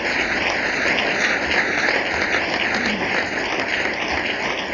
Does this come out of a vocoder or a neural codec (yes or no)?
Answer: no